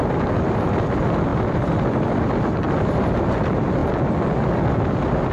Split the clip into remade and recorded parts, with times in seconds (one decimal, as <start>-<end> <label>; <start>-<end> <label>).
0.0-5.3 recorded